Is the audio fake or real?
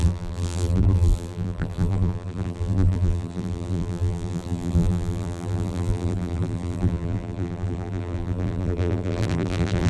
fake